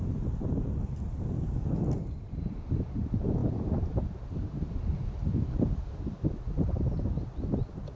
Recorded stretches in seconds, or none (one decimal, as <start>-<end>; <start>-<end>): 0.0-8.0